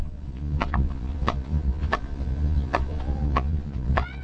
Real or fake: fake